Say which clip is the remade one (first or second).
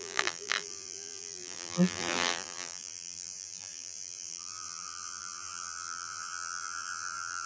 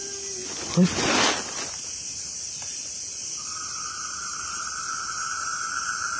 first